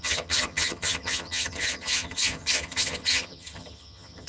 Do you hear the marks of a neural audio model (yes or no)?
yes